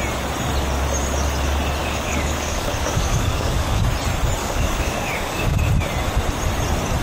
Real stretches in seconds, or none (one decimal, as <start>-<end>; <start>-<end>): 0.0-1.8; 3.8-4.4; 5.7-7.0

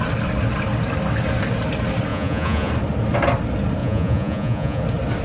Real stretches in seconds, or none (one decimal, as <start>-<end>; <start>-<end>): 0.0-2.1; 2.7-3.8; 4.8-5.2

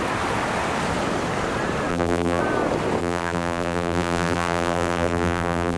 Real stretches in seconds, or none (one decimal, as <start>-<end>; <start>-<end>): 0.0-1.9; 2.4-3.0